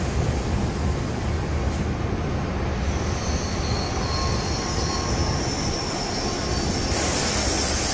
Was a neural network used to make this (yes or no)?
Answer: no